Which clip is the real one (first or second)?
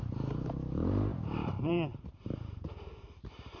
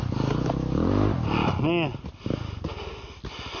second